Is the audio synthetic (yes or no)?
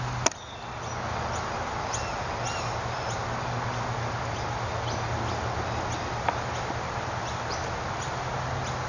no